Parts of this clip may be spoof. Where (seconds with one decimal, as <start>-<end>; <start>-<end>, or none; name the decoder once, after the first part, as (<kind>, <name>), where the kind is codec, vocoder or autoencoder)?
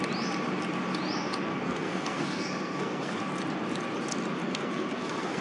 1.5-3.2 (codec, SNAC); 4.4-5.4